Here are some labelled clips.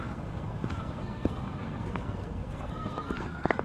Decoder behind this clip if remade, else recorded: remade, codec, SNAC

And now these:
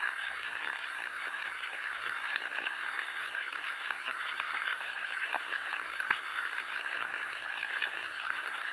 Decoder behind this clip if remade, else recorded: remade, codec, SNAC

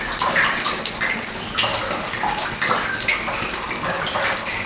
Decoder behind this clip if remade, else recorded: recorded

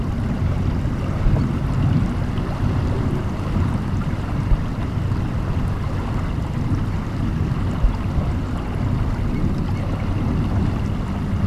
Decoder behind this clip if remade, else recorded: recorded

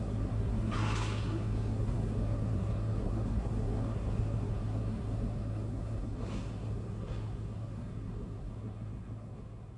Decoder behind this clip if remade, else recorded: remade, codec, SNAC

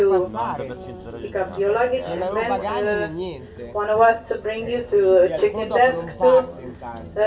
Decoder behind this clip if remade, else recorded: recorded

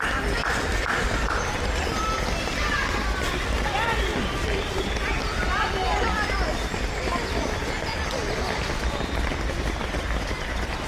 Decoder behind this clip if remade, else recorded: recorded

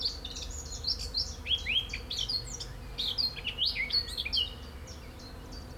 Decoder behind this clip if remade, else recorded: recorded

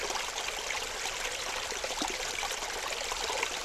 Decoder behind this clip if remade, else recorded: recorded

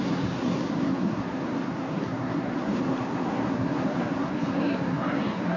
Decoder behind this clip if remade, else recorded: remade, codec, SNAC